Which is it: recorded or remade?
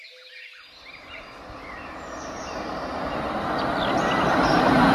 recorded